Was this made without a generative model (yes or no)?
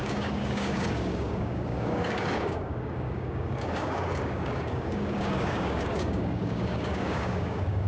no